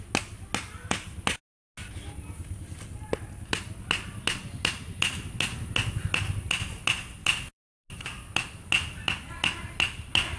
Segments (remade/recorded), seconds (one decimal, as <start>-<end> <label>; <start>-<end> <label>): 0.0-7.2 recorded; 7.2-8.2 remade; 8.2-10.4 recorded